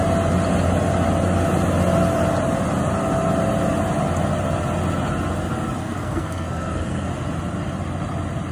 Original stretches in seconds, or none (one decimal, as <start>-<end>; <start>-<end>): 0.0-5.8; 7.1-8.5